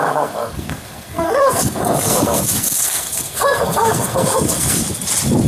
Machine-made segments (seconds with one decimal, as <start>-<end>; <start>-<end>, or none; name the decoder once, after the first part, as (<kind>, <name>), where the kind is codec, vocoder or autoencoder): 0.0-4.8 (codec, SNAC)

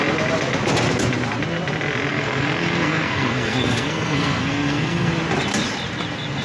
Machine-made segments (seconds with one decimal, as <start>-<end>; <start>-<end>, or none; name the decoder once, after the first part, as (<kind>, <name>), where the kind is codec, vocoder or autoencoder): 2.1-5.1 (codec, SNAC)

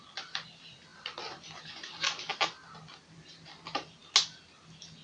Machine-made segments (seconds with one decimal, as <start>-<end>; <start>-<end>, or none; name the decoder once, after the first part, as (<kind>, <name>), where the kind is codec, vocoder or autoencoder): none

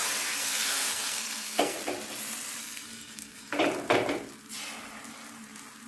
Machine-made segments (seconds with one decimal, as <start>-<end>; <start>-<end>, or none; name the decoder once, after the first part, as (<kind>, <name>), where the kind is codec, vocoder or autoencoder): 0.0-1.8 (codec, SNAC); 2.6-3.5

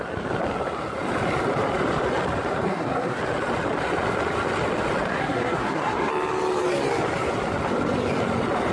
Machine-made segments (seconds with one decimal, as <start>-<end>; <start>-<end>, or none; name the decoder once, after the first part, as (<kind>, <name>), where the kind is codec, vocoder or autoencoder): 2.7-3.2 (codec, SNAC); 5.2-6.1

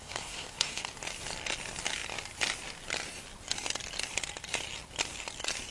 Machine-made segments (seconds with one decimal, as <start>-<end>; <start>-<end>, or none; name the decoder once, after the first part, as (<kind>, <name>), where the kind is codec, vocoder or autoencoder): 0.0-0.8 (codec, SNAC)

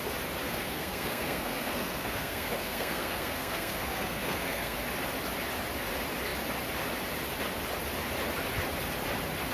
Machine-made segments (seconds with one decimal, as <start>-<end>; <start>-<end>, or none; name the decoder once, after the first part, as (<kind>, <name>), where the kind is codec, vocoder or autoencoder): 0.4-4.8 (codec, SNAC)